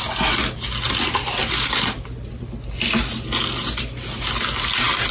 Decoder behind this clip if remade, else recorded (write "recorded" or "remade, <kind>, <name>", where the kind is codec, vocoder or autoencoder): recorded